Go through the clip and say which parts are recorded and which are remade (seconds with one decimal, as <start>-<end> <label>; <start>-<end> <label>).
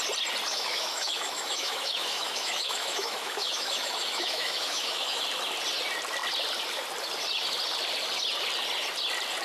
0.0-0.5 recorded; 0.5-5.2 remade; 5.2-9.4 recorded